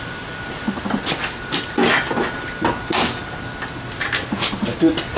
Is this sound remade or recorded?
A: recorded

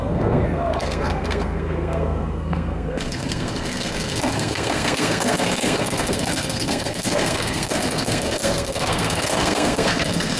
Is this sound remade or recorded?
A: remade